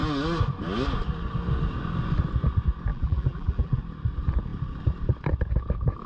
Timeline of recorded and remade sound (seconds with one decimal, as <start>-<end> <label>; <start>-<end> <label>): 0.0-2.9 recorded; 2.9-3.8 remade; 3.8-6.1 recorded